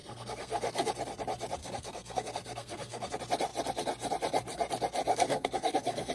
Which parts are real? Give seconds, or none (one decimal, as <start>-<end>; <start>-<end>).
0.9-1.6; 3.1-5.1